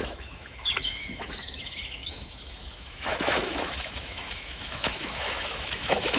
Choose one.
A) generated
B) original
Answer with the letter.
A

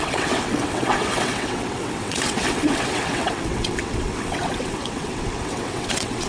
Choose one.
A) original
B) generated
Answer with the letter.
B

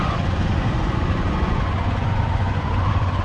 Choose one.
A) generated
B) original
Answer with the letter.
A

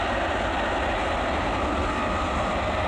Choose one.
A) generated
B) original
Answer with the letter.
B